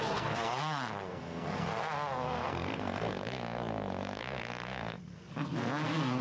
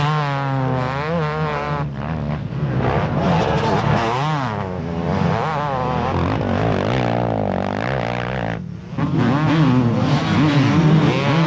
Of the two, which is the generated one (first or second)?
first